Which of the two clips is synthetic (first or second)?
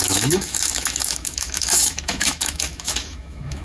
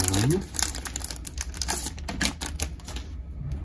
first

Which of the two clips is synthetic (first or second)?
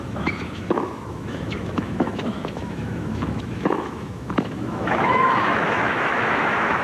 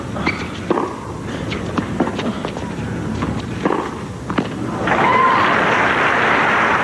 first